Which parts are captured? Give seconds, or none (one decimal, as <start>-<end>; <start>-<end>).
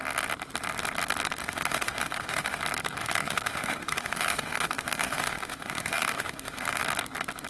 0.0-1.4; 2.6-3.0; 6.8-7.5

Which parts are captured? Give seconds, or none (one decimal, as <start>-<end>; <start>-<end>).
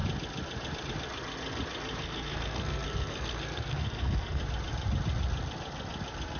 0.0-2.0; 4.4-6.4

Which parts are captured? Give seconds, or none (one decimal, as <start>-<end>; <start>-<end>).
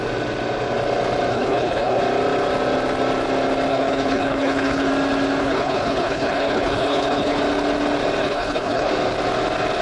0.0-1.3; 2.0-3.7; 4.9-5.4; 7.4-8.2; 8.9-9.8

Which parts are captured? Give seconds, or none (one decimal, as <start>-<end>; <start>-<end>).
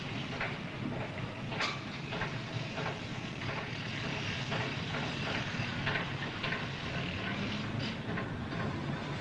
0.0-3.1; 3.7-9.2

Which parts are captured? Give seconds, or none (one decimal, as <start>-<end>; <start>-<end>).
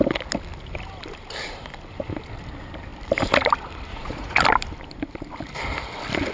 0.0-3.9; 4.4-6.3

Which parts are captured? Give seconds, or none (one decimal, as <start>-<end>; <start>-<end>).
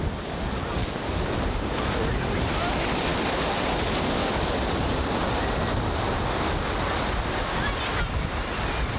0.0-0.8; 1.3-9.0